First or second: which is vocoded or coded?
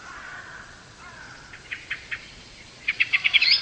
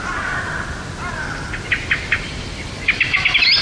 first